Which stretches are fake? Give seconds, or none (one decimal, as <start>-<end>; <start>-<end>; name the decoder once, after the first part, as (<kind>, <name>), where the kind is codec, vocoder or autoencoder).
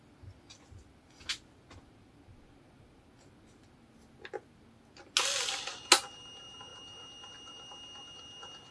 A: none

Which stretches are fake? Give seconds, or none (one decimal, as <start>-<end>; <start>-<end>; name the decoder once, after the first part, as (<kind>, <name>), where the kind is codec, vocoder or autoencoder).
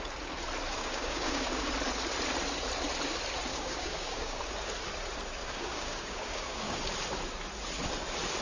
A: 0.7-1.7 (codec, DAC); 3.5-4.4; 5.4-6.8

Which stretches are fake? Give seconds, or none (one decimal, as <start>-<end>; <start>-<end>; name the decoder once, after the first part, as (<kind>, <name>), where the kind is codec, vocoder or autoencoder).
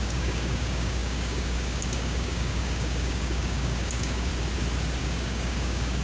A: 0.0-4.3 (codec, DAC); 5.0-6.0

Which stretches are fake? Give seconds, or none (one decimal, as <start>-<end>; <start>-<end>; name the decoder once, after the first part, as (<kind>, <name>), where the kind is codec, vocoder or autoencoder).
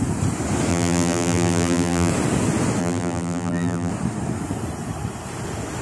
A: 0.7-2.1 (vocoder, BigVGAN v2); 2.8-3.9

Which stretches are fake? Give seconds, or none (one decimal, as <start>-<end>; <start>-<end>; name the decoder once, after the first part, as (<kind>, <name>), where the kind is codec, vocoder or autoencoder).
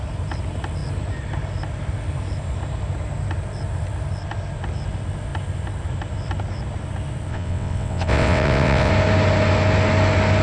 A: 7.3-8.9 (vocoder, WaveNeXt)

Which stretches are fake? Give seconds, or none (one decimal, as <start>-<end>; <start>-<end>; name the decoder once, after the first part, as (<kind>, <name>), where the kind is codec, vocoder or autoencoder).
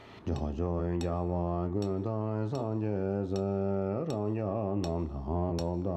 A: none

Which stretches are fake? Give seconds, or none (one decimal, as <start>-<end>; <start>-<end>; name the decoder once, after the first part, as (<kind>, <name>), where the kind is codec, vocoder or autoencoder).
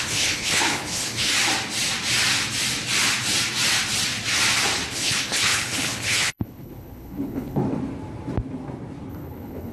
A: 0.0-1.3 (codec, HILCodec); 4.9-7.6; 9.1-9.7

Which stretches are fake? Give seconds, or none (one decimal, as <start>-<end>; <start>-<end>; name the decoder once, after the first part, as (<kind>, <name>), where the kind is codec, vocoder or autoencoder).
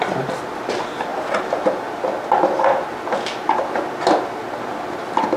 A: 1.1-1.9 (vocoder, BigVGAN v2)